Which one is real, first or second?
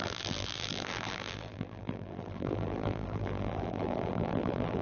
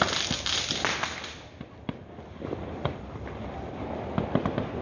second